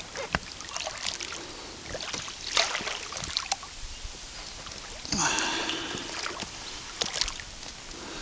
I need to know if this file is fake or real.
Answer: real